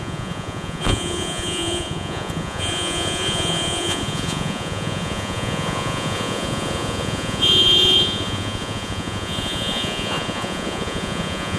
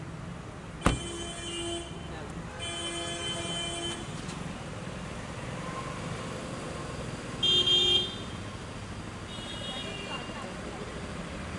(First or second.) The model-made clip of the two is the first